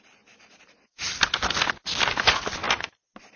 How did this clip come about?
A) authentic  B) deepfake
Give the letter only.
A